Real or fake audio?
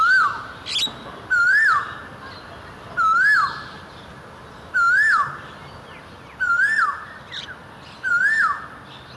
real